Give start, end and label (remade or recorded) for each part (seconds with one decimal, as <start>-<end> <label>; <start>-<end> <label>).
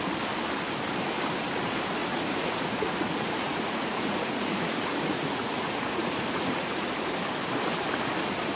0.0-2.0 recorded; 2.0-6.9 remade; 6.9-8.6 recorded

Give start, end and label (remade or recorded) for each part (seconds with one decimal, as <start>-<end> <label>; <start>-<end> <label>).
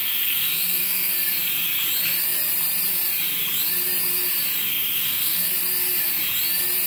0.0-1.1 remade; 1.1-4.7 recorded; 4.7-5.5 remade; 5.5-6.9 recorded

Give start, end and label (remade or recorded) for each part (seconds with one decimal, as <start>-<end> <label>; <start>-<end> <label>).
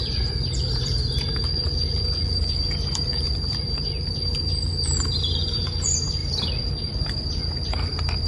0.0-8.3 remade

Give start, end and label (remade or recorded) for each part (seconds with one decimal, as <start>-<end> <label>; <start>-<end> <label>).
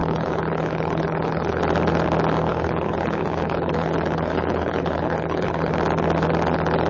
0.0-1.6 remade; 1.6-2.5 recorded; 2.5-5.7 remade; 5.7-6.9 recorded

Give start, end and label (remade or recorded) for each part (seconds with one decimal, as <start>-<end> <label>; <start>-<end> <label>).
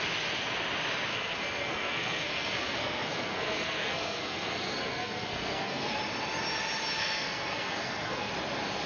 0.0-1.1 recorded; 1.1-5.9 remade; 5.9-7.0 recorded; 7.0-8.3 remade; 8.3-8.9 recorded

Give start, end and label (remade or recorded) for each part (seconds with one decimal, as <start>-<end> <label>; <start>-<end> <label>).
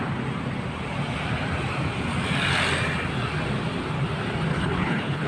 0.0-4.5 recorded; 4.5-5.3 remade